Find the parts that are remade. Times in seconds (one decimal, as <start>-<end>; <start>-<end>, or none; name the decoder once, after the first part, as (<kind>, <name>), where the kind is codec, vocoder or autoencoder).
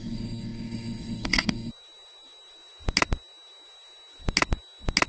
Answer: 0.0-1.7 (codec, SNAC)